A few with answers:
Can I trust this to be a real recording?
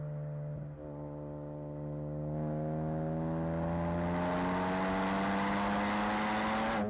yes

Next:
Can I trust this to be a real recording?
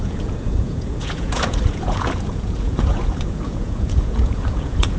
no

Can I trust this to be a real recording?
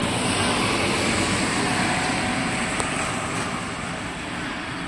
yes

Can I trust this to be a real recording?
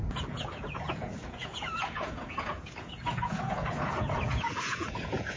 no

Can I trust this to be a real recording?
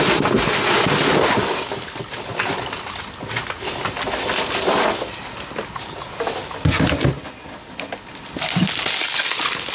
yes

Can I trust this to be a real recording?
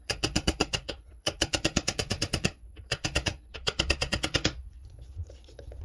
no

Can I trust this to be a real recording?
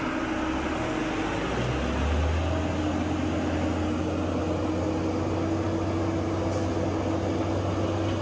yes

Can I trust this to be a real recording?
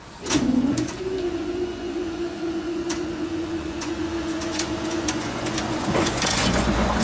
no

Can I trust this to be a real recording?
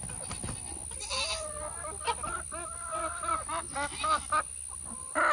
yes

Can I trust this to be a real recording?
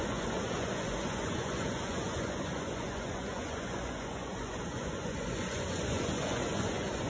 no